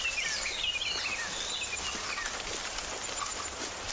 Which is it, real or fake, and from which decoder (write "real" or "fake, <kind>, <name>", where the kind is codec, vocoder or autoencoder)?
real